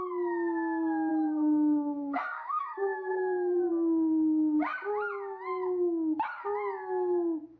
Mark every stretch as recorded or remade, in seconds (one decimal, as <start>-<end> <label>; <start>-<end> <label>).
0.0-1.1 recorded; 1.1-3.7 remade; 3.7-7.6 recorded